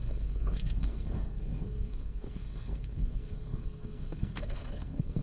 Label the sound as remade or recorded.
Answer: remade